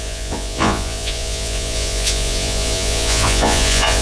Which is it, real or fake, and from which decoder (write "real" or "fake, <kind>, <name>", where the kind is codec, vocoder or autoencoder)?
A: fake, vocoder, Vocos